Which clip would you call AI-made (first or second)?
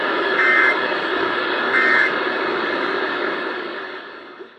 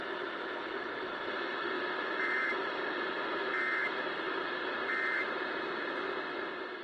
first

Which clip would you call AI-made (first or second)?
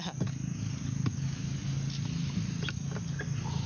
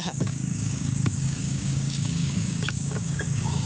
second